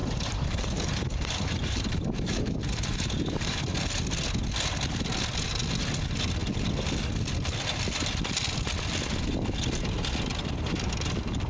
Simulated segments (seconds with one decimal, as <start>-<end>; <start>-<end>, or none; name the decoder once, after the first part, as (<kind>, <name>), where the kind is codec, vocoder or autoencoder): 0.0-3.6 (vocoder, BigVGAN v2)

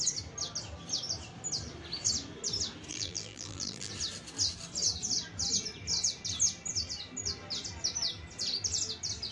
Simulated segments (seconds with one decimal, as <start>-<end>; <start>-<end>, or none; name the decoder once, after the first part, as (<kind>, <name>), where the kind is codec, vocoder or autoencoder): 2.9-3.9 (vocoder, BigVGAN v2)